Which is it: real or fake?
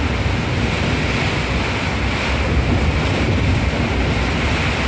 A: real